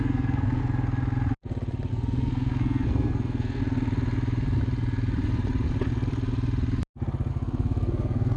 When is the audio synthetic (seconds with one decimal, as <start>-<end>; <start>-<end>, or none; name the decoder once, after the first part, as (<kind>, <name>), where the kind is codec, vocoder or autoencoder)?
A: 0.0-0.6 (codec, SNAC); 1.9-3.6; 7.3-8.4

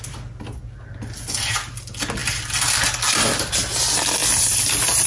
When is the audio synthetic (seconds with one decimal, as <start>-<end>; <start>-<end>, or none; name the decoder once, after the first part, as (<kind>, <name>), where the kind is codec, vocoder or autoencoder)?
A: none

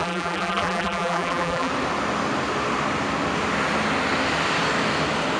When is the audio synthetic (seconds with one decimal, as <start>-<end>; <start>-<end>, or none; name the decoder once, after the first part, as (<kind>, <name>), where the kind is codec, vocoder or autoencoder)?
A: 0.0-1.7 (vocoder, BigVGAN v2)

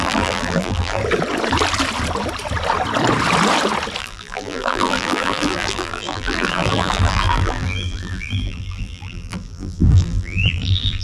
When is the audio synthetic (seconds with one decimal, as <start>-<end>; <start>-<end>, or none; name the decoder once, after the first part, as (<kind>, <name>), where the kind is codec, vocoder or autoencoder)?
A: 0.0-1.0 (vocoder, BigVGAN v2); 4.0-11.0

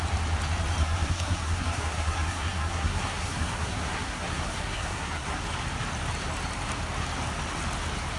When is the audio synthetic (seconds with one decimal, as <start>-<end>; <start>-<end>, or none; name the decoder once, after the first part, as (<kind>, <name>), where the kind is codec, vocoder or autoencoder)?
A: 0.8-5.4 (codec, SNAC)

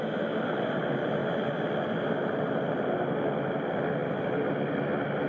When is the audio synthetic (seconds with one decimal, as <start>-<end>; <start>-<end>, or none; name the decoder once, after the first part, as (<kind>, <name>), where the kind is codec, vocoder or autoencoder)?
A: none

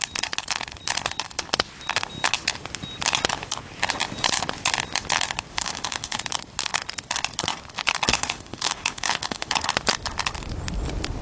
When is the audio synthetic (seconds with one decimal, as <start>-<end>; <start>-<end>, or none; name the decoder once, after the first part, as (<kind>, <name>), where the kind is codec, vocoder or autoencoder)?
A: 5.5-6.2 (autoencoder, DAC-VAE); 8.1-9.5

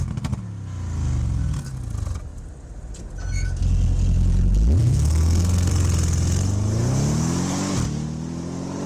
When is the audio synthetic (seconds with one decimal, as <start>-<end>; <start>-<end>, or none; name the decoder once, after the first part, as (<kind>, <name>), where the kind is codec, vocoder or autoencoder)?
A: 4.8-5.7 (codec, SNAC)